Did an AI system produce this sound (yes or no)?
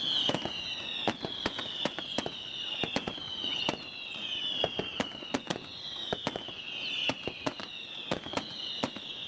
yes